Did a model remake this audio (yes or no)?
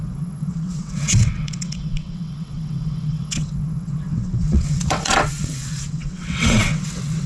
yes